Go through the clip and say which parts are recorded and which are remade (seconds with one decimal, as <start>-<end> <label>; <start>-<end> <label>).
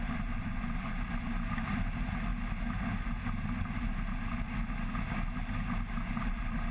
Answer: 0.0-2.3 remade; 2.3-3.4 recorded; 3.4-3.9 remade; 3.9-6.1 recorded; 6.1-6.7 remade